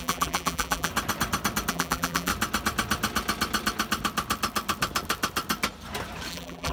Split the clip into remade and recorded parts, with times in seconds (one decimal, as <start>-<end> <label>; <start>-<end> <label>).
0.0-0.9 remade; 0.9-1.7 recorded; 1.7-2.3 remade; 2.3-6.3 recorded; 6.3-6.7 remade